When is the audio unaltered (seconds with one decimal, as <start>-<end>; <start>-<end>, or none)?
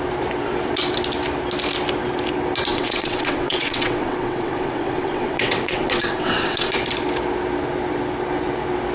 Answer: 0.0-2.7; 6.7-8.9